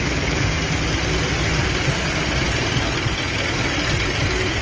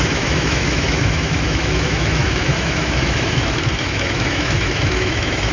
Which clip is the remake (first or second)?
second